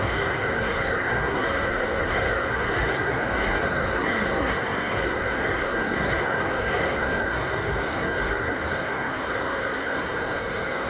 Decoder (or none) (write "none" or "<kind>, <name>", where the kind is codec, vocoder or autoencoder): codec, SNAC